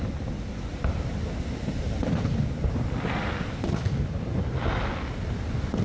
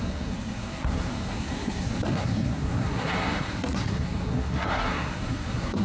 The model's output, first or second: second